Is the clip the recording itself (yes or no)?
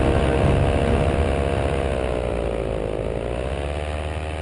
yes